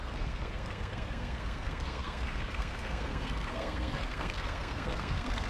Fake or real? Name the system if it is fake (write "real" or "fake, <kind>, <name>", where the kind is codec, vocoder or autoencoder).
fake, codec, SNAC